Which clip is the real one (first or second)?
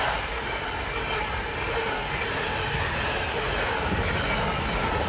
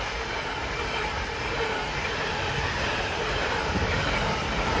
first